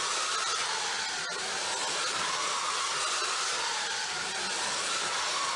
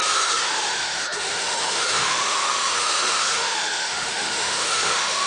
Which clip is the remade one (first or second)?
second